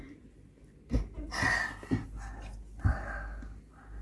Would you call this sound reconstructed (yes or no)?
no